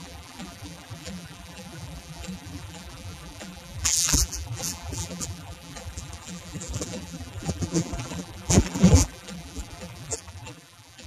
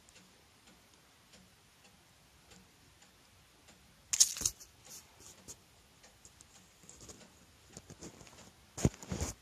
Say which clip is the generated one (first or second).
first